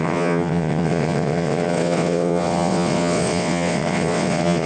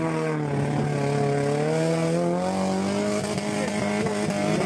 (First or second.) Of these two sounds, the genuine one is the second